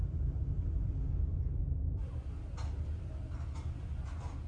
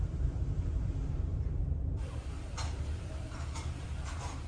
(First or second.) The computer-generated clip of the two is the second